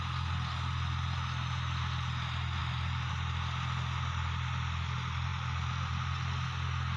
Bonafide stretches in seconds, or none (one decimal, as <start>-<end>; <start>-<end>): 0.0-7.0